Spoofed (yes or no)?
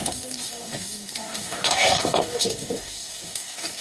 yes